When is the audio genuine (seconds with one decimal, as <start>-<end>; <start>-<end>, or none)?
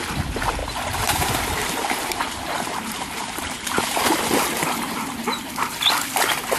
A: 0.0-0.6; 4.6-6.6